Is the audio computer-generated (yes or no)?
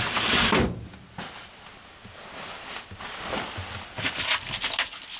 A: no